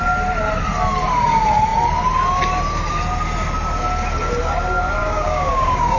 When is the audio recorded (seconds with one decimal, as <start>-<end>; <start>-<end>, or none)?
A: 0.0-5.0